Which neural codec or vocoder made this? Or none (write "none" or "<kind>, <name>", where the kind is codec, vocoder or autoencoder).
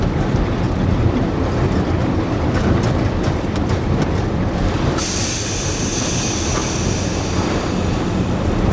vocoder, BigVGAN v2